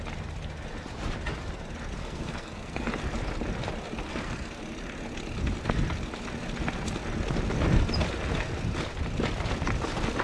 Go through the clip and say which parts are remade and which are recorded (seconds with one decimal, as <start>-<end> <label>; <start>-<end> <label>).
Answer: 0.0-2.0 recorded; 2.0-2.9 remade; 2.9-4.1 recorded; 4.1-4.6 remade; 4.6-10.2 recorded